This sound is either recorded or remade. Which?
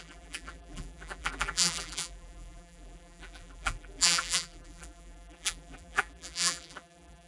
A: remade